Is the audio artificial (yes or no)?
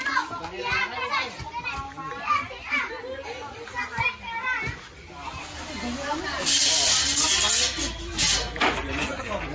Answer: no